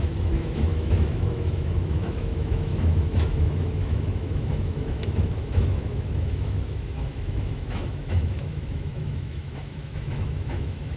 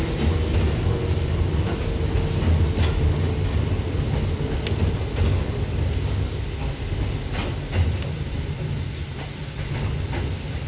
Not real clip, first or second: first